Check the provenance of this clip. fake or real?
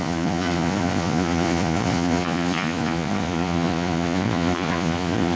fake